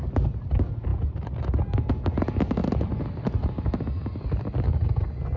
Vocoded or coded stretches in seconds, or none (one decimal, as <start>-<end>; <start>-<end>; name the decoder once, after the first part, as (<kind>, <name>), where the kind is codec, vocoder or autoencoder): none

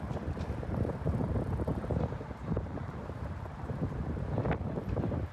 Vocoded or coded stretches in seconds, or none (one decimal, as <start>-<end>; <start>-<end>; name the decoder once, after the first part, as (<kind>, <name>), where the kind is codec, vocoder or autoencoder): 0.0-5.3 (vocoder, BigVGAN v2)

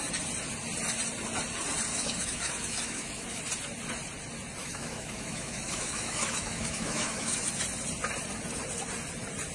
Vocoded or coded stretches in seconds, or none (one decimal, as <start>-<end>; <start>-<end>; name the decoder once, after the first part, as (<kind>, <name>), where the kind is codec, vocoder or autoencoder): 1.9-3.4 (autoencoder, DAC-VAE); 4.6-7.5